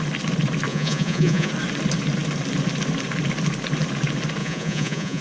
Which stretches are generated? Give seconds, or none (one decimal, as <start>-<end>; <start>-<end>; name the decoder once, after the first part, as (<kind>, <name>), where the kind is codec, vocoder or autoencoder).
0.7-1.5 (vocoder, Vocos); 4.4-5.2

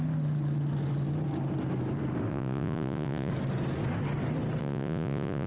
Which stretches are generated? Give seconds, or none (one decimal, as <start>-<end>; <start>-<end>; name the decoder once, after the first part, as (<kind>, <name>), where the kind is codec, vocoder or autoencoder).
2.3-3.3 (vocoder, Vocos); 4.6-5.5

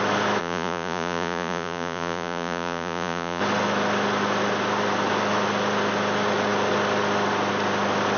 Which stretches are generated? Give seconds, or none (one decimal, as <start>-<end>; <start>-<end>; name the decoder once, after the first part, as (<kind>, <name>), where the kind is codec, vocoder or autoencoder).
0.4-3.4 (vocoder, Vocos)

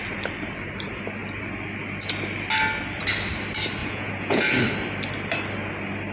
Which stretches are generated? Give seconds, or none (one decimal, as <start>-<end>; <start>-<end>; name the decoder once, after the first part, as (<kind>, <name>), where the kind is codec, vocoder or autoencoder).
3.8-4.5 (vocoder, Vocos)

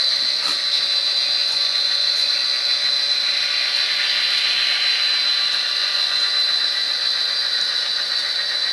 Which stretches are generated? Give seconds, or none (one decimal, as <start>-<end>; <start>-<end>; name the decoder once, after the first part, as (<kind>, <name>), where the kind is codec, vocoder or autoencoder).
1.4-2.3 (vocoder, Vocos); 5.8-6.3